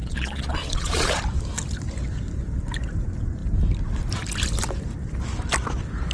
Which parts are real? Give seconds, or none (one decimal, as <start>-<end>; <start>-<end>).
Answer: 1.2-6.1